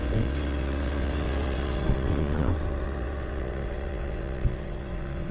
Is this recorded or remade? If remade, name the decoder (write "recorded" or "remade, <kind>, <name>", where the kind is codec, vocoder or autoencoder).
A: remade, vocoder, WaveNeXt